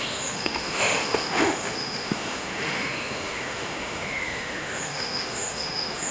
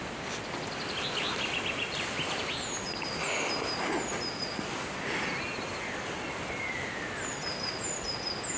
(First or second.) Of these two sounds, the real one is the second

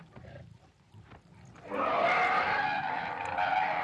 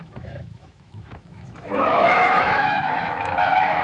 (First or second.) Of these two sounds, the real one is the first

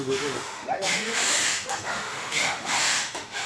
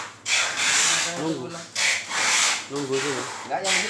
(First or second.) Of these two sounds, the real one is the second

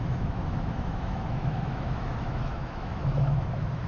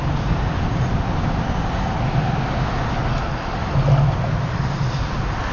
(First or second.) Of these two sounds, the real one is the second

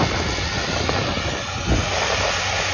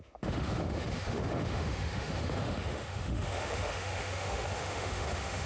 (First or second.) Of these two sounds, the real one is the first